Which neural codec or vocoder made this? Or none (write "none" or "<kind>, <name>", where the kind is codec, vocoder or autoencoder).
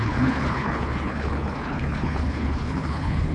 codec, HILCodec